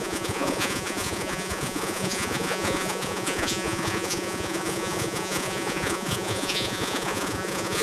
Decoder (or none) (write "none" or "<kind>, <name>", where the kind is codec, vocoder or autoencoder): vocoder, Vocos